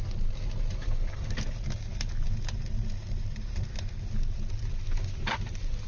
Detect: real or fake real